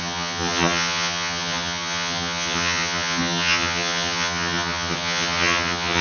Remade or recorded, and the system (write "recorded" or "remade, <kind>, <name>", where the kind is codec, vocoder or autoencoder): remade, vocoder, HiFi-GAN